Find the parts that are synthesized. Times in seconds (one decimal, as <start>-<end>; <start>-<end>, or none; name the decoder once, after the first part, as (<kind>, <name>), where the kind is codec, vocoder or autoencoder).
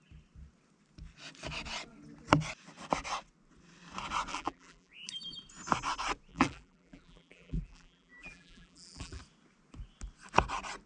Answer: 4.3-4.9 (vocoder, BigVGAN v2); 6.3-9.2